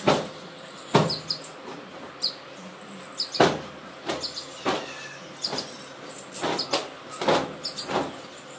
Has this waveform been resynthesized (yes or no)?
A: no